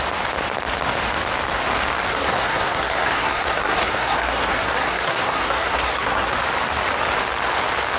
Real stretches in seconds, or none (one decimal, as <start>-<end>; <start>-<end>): 0.0-2.1; 6.3-8.0